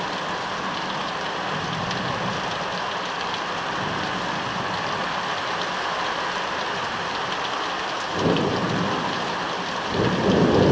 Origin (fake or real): real